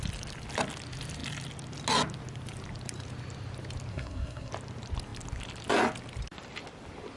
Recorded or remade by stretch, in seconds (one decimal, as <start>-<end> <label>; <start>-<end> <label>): 0.0-3.9 recorded; 3.9-4.5 remade; 4.5-7.2 recorded